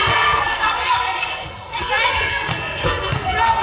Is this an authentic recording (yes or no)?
no